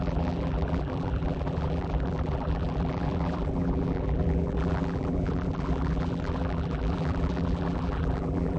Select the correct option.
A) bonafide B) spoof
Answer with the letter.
B